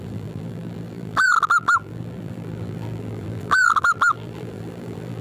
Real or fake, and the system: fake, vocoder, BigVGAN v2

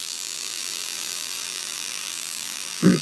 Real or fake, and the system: fake, vocoder, BigVGAN v2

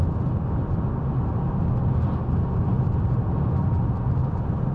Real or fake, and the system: real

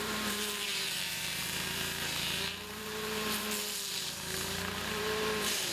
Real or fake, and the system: fake, vocoder, BigVGAN v2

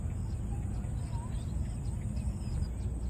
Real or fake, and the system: real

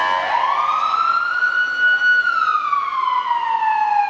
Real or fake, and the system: real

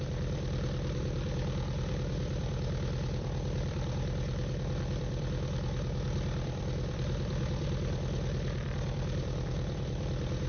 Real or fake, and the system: fake, vocoder, BigVGAN v2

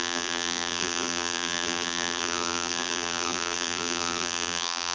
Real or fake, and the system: fake, vocoder, BigVGAN v2